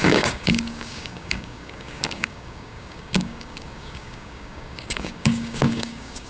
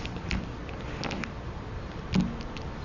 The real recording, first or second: second